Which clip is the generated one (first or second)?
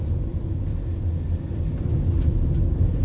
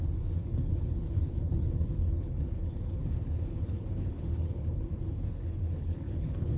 second